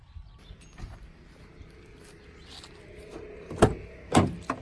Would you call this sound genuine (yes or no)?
yes